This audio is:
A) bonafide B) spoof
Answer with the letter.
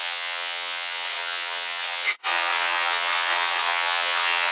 B